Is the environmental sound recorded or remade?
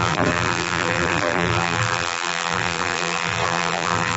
remade